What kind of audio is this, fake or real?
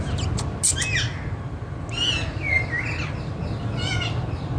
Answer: real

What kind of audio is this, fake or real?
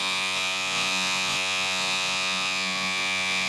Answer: fake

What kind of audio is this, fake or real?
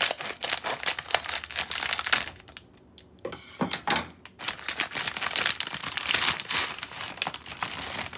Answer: real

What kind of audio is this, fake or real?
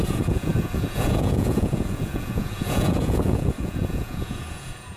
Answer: fake